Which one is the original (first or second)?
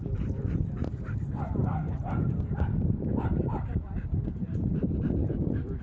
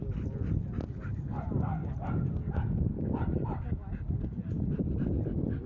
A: second